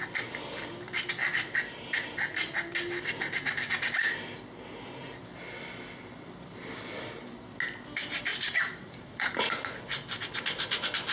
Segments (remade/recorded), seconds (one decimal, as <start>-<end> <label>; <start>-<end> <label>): 0.0-8.3 recorded; 8.3-9.8 remade; 9.8-11.1 recorded